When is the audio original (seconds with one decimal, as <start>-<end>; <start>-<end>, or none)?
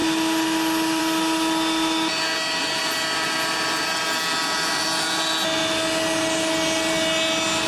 0.0-7.7